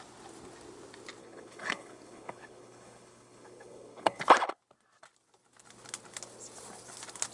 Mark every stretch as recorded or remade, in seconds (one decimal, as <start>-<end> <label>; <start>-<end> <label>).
0.0-1.2 recorded; 1.2-4.2 remade; 4.2-7.3 recorded